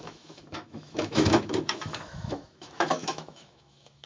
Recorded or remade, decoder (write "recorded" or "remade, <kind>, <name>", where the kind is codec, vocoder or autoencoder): remade, autoencoder, DAC-VAE